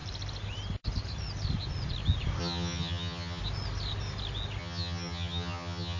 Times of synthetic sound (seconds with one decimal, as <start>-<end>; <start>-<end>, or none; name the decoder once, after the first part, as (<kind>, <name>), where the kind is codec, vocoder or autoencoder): 2.4-3.4 (vocoder, HiFi-GAN); 4.6-6.0